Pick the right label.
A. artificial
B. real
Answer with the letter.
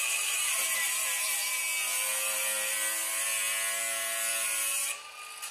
B